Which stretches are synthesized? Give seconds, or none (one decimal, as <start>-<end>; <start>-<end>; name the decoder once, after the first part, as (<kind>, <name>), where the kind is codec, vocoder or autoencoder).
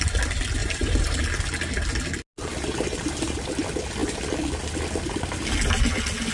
0.6-1.2 (vocoder, BigVGAN v2); 2.5-3.4